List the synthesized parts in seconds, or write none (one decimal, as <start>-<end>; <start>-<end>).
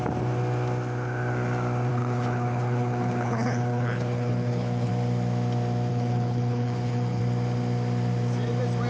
1.9-4.9; 5.9-7.2